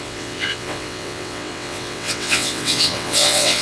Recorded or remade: remade